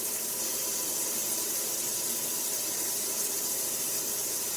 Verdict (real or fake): fake